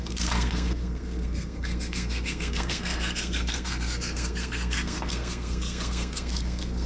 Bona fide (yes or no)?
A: no